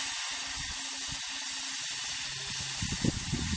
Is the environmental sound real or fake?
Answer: real